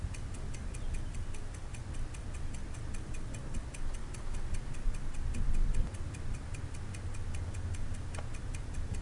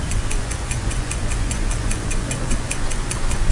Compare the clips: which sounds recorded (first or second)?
first